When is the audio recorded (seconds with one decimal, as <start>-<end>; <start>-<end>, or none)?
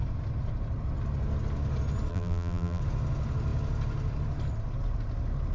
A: 0.0-2.1; 2.8-5.5